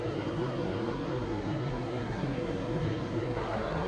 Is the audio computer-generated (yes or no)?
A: yes